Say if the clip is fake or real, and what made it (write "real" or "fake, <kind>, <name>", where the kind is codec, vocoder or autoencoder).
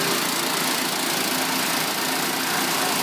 real